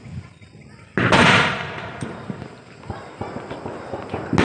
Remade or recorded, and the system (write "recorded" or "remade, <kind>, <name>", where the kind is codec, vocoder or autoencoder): recorded